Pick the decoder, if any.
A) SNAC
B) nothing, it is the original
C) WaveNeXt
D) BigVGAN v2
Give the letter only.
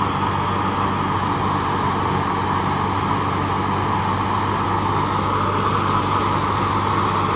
B